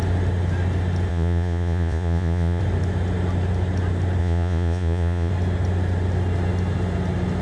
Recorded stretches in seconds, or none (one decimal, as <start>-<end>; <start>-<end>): 0.0-1.1; 2.6-4.2; 5.3-7.4